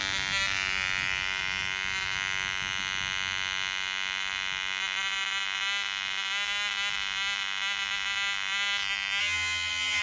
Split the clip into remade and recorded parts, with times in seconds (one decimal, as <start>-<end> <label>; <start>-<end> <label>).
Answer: 0.0-9.2 recorded; 9.2-10.0 remade